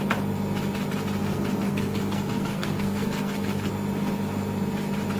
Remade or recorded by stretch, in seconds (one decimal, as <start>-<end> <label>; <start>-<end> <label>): 0.0-1.2 recorded; 1.2-3.7 remade; 3.7-5.2 recorded